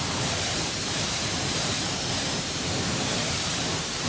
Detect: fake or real fake